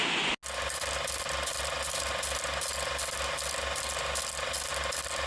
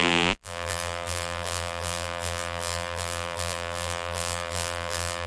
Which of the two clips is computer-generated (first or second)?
second